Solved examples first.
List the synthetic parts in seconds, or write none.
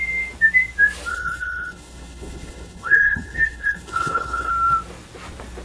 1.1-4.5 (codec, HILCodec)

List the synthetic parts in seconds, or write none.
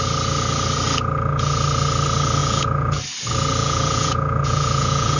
2.4-3.0 (vocoder, Vocos); 3.6-5.2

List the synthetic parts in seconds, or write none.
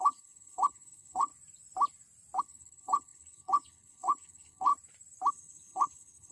0.0-1.3 (codec, HILCodec); 2.4-4.7; 5.3-6.3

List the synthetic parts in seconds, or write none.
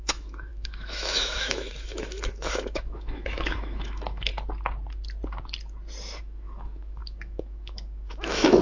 0.0-4.3 (autoencoder, DAC-VAE); 6.2-8.6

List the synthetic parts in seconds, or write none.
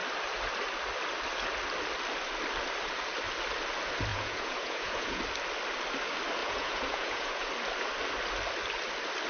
4.1-5.2 (vocoder, Vocos); 6.4-7.5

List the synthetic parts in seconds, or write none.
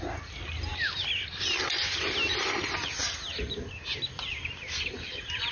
none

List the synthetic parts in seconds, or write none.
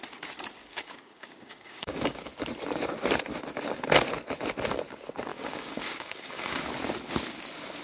0.6-2.3 (codec, DAC); 5.3-6.6